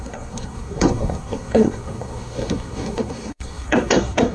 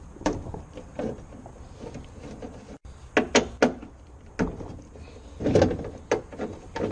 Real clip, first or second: second